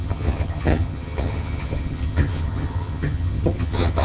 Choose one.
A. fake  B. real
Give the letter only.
A